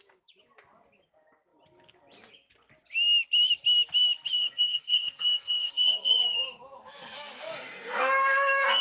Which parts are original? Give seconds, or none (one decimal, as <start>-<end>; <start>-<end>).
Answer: 0.0-4.4